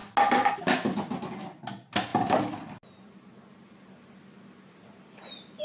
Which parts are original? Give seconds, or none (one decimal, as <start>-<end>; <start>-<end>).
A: 0.0-5.6